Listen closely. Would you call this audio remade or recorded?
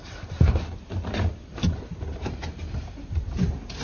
remade